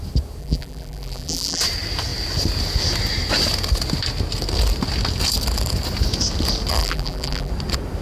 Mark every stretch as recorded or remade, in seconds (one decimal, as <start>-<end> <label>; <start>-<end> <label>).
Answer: 0.0-0.4 recorded; 0.4-1.6 remade; 1.6-6.8 recorded; 6.8-7.5 remade; 7.5-8.0 recorded